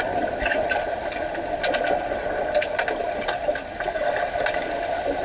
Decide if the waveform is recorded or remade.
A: recorded